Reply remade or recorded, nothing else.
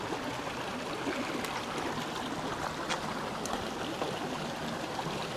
recorded